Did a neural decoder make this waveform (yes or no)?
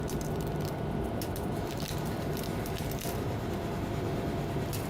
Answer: no